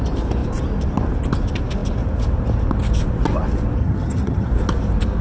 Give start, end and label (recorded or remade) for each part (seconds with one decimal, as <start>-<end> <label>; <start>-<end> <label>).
0.0-3.8 recorded; 3.8-4.5 remade; 4.5-5.2 recorded